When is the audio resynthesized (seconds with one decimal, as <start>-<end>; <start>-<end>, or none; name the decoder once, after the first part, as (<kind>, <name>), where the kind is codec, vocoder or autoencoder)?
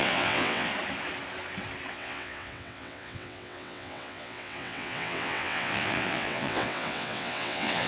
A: 0.0-0.7 (vocoder, WaveNeXt); 1.9-7.9